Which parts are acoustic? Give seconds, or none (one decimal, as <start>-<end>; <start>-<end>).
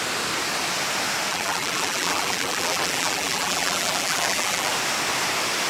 0.0-1.3; 4.7-5.7